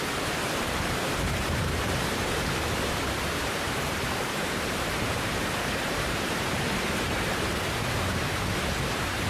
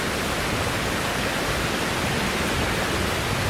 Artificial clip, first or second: first